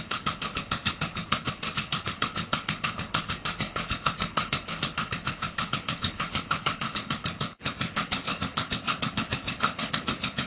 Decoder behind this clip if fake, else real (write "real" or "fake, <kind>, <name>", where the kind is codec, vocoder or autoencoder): fake, codec, HILCodec